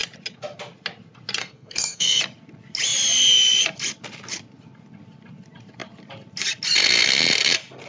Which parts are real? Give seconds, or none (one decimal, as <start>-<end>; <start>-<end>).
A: 0.0-1.4; 2.2-7.9